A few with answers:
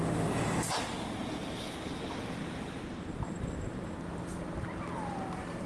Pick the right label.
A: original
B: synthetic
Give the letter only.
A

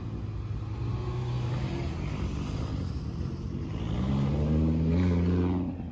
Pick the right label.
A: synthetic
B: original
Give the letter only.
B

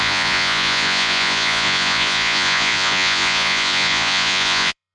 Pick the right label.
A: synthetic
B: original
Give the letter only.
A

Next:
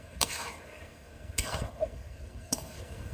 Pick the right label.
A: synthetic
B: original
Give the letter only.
A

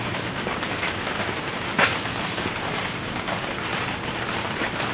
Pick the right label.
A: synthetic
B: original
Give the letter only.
A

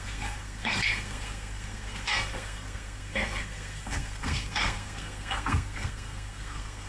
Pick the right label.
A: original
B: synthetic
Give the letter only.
B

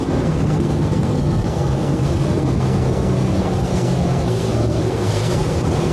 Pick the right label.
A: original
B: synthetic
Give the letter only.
B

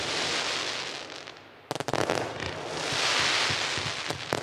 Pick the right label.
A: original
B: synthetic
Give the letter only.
A